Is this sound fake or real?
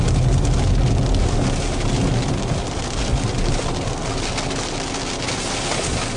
real